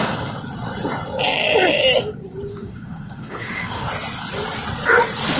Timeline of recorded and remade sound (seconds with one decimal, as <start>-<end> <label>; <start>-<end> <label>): 0.0-2.5 recorded; 2.5-3.9 remade; 3.9-5.4 recorded